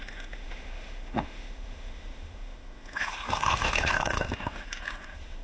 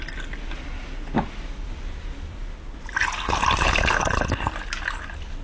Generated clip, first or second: first